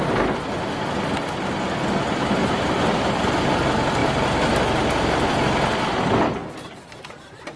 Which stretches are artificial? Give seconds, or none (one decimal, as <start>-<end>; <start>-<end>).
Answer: 2.4-3.4; 4.0-5.3; 6.4-7.6